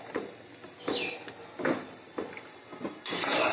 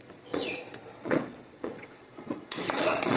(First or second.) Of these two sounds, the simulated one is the second